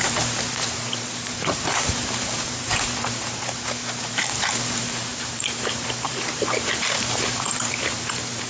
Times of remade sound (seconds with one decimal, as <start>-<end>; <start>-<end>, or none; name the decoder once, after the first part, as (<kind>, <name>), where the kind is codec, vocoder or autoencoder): 0.0-8.5 (vocoder, BigVGAN v2)